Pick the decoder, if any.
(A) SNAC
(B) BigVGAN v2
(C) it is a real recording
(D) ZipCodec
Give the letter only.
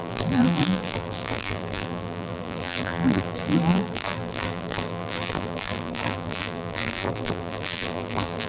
B